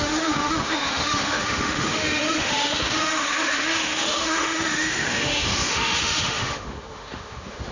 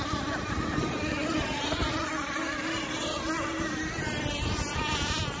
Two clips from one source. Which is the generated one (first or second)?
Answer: first